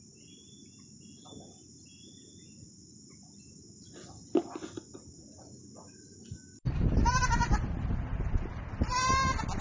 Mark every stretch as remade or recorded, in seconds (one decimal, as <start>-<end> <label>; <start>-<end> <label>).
0.0-9.6 recorded